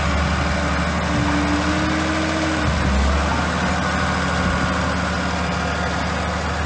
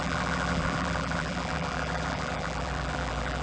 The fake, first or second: second